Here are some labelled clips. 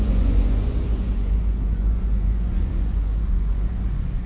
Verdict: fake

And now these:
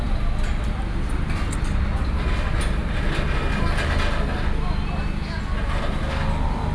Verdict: real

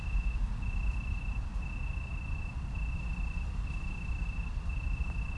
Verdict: real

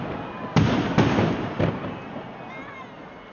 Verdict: real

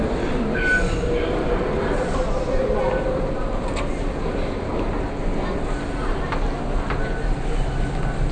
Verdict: real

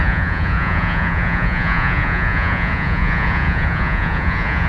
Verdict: fake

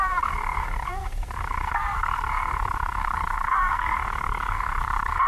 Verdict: fake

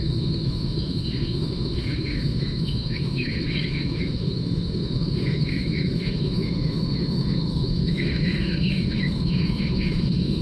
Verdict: fake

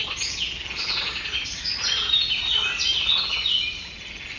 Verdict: real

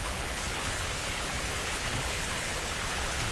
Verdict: fake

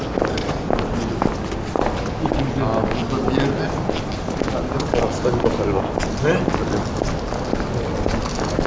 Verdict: real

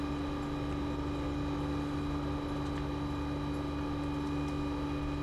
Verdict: real